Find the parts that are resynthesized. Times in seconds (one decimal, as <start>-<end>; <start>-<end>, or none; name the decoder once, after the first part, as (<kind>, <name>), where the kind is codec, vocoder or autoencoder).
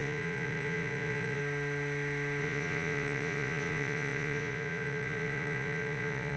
0.0-1.4 (vocoder, Vocos); 2.4-6.4